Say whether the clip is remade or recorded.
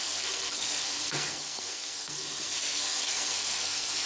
remade